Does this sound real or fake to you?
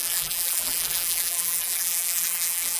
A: fake